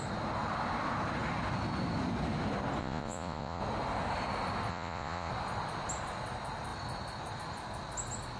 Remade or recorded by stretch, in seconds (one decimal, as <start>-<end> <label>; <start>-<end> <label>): 0.0-2.8 recorded; 2.8-3.6 remade; 3.6-4.7 recorded; 4.7-5.3 remade; 5.3-8.4 recorded